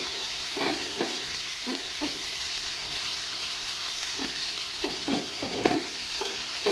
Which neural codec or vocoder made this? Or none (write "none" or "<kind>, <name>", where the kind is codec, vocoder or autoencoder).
codec, SNAC